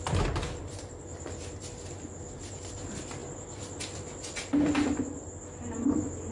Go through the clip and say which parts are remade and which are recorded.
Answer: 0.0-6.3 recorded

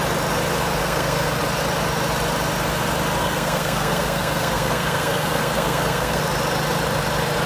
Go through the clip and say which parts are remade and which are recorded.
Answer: 0.0-0.8 recorded; 0.8-1.4 remade; 1.4-3.2 recorded; 3.2-6.2 remade; 6.2-7.5 recorded

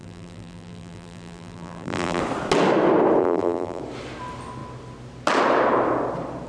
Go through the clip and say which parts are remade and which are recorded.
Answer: 0.0-2.2 remade; 2.2-3.2 recorded; 3.2-3.8 remade; 3.8-6.5 recorded

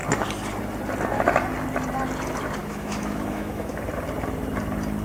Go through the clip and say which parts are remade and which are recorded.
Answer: 0.0-2.6 recorded; 2.6-3.8 remade; 3.8-5.0 recorded

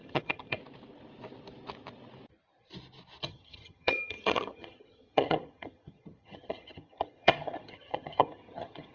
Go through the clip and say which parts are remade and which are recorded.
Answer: 0.0-0.6 remade; 0.6-3.2 recorded; 3.2-8.9 remade

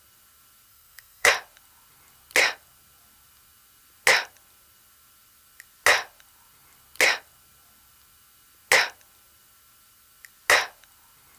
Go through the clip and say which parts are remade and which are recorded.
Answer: 0.0-0.7 recorded; 0.7-1.3 remade; 1.3-11.4 recorded